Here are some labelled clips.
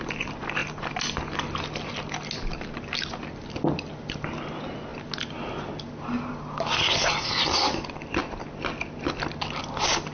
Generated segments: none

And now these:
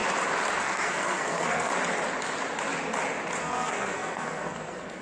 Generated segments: 0.6-1.7 (codec, SNAC); 3.4-5.0

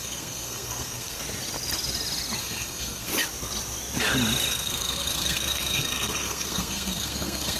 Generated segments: 0.0-1.2 (codec, SNAC); 2.4-3.1; 4.5-7.6